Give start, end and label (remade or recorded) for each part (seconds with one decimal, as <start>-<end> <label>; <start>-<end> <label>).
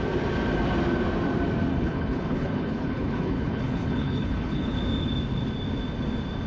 0.0-1.7 recorded; 1.7-4.8 remade; 4.8-6.5 recorded